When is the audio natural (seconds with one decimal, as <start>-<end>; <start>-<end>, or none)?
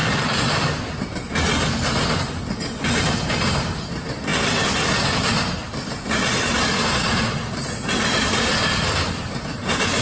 0.0-10.0